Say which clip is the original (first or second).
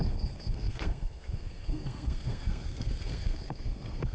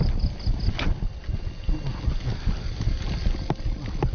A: second